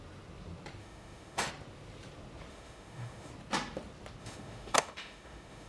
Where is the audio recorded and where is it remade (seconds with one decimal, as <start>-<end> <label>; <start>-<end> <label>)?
0.0-0.8 recorded; 0.8-1.5 remade; 1.5-2.5 recorded; 2.5-3.3 remade; 3.3-4.2 recorded; 4.2-5.7 remade